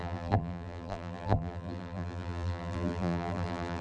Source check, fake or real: fake